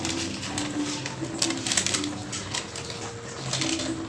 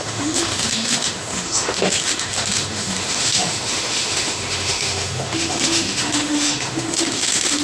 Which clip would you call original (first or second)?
first